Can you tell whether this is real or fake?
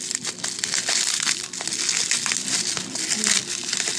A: real